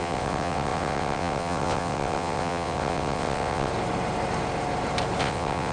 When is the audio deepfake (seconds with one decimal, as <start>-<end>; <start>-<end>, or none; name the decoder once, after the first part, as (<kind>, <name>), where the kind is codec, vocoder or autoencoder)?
0.0-3.7 (vocoder, WaveNeXt); 5.2-5.7